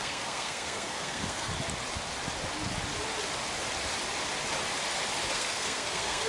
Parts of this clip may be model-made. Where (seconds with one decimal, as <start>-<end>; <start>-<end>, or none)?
0.0-1.5; 5.3-6.3